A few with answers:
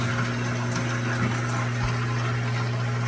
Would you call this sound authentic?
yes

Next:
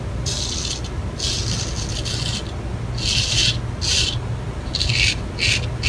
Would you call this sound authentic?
yes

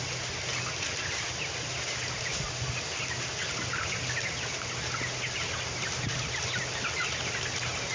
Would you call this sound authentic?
yes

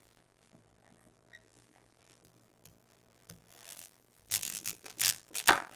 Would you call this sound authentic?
no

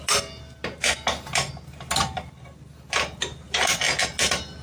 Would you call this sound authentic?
no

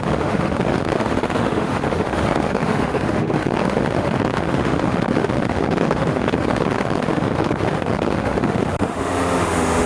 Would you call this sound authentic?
no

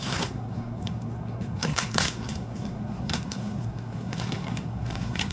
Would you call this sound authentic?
no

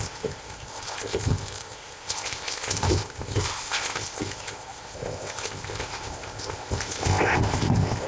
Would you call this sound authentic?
no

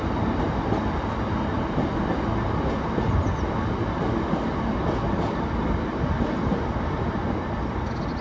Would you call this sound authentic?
yes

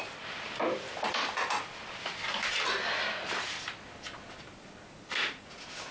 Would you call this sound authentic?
yes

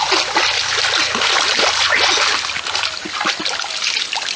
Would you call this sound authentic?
yes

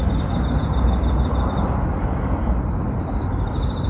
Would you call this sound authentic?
yes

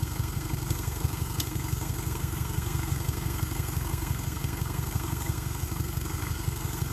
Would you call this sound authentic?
no